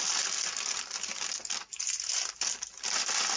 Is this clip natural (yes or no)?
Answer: yes